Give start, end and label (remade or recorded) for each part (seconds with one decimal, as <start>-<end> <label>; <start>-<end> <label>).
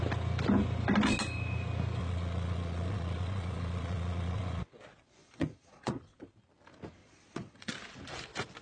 0.0-2.0 recorded; 2.0-4.6 remade; 4.6-5.2 recorded; 5.2-6.3 remade; 6.3-7.0 recorded; 7.0-7.7 remade; 7.7-8.6 recorded